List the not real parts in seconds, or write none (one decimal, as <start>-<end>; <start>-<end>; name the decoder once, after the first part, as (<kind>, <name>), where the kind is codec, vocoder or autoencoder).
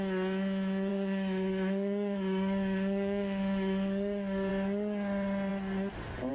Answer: 0.9-4.5 (codec, DAC)